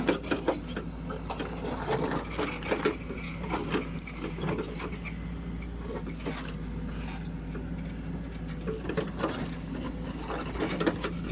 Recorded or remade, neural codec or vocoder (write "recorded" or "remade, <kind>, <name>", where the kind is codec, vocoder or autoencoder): recorded